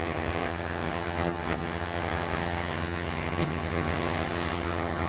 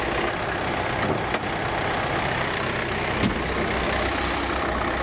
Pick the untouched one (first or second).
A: second